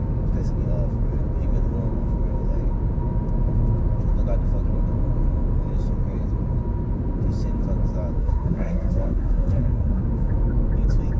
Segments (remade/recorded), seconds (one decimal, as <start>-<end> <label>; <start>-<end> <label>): 0.0-8.2 recorded; 8.2-10.0 remade; 10.0-11.2 recorded